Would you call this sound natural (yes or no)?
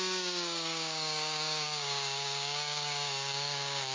no